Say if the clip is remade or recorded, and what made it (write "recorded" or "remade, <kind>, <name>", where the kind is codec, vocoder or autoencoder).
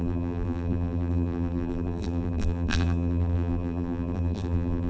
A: remade, vocoder, BigVGAN v2